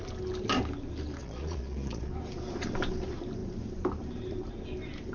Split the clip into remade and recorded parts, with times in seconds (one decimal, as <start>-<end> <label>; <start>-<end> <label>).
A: 0.0-1.2 recorded; 1.2-2.1 remade; 2.1-5.1 recorded